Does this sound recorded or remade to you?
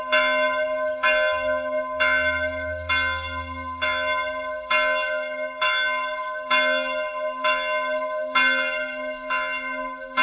recorded